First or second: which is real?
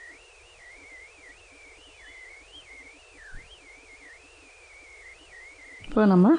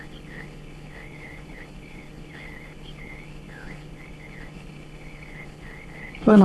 first